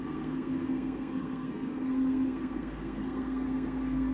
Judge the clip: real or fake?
fake